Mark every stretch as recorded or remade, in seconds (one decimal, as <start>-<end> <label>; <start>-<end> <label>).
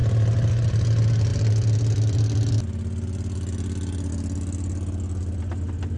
0.0-6.0 recorded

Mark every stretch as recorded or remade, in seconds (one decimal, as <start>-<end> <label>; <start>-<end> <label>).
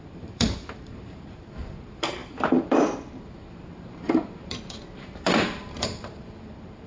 0.0-6.9 remade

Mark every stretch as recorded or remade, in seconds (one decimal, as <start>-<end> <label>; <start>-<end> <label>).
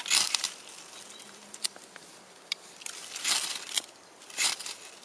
0.0-5.0 remade